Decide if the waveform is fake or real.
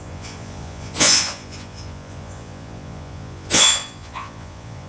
fake